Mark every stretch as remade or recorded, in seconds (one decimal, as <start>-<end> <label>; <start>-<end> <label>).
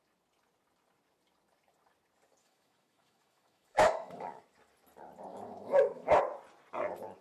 0.0-2.4 recorded; 2.4-4.4 remade; 4.4-5.3 recorded; 5.3-6.2 remade; 6.2-7.2 recorded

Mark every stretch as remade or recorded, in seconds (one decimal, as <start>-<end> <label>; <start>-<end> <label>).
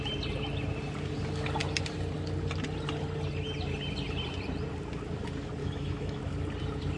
0.0-5.6 recorded; 5.6-6.2 remade; 6.2-7.0 recorded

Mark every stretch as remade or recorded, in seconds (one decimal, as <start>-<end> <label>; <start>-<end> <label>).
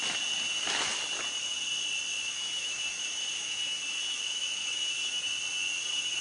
0.0-2.1 recorded; 2.1-5.1 remade; 5.1-6.2 recorded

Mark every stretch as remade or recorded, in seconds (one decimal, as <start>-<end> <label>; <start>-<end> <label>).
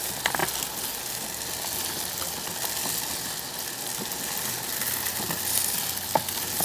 0.0-6.6 recorded